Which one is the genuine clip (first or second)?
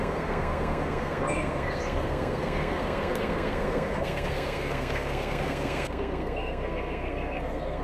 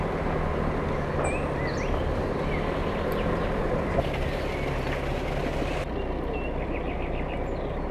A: second